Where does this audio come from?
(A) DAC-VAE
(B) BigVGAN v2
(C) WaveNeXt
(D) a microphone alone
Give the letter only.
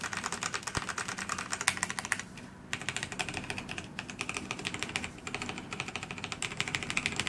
D